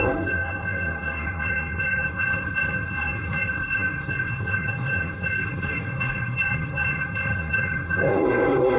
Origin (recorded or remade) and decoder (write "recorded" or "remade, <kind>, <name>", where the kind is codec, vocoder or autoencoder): remade, codec, SNAC